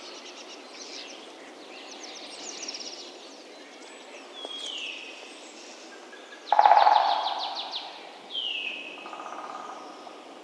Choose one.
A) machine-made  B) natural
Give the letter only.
B